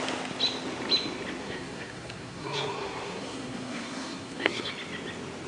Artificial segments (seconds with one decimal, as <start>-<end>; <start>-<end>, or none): 1.4-4.7